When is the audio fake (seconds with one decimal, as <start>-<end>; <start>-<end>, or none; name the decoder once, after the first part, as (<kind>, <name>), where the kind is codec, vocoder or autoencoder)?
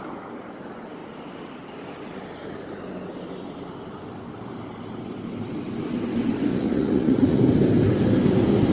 6.5-7.4 (vocoder, Vocos)